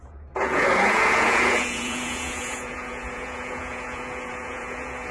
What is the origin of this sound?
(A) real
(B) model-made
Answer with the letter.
B